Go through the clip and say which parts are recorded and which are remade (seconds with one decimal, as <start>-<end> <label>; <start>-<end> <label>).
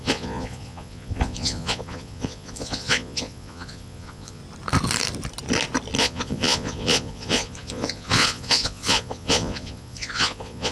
0.0-4.4 remade; 4.4-6.0 recorded; 6.0-10.7 remade